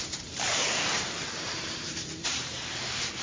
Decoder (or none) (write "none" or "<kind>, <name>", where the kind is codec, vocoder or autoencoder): vocoder, BigVGAN v2